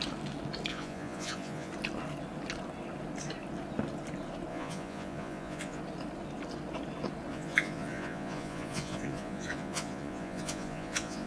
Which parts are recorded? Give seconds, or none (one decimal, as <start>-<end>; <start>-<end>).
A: 0.0-0.7; 1.7-4.5; 5.8-7.3